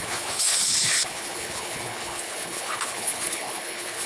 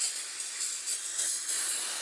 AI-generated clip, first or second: first